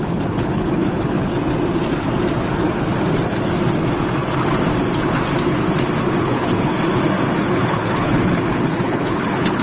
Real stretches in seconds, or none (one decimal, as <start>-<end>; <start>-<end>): 1.3-6.2; 6.7-7.4